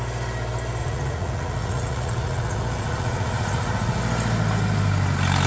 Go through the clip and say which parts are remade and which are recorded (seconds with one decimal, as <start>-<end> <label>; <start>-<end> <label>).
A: 0.0-0.8 recorded; 0.8-4.0 remade; 4.0-5.5 recorded